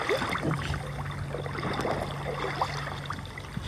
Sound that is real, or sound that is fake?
real